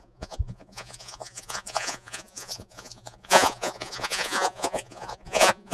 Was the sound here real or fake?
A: fake